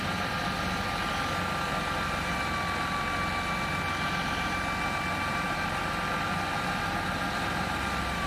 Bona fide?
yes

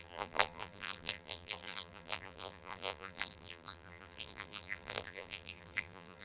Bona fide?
no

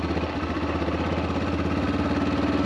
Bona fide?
yes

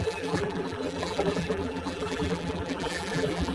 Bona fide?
no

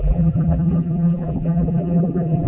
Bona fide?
no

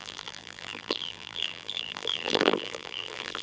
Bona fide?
no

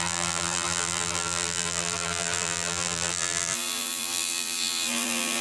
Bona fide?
no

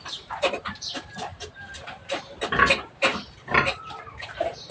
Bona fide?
no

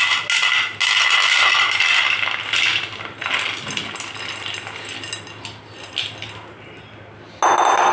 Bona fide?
yes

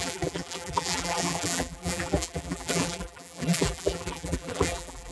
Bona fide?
no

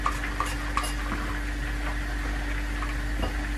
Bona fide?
yes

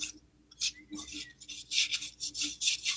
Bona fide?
yes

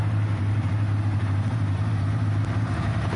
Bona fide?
no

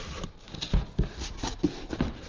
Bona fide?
yes